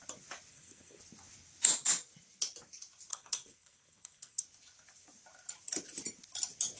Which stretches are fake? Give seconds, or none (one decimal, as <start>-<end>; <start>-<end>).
0.5-1.0; 3.1-4.4